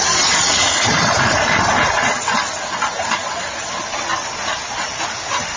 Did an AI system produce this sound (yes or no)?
no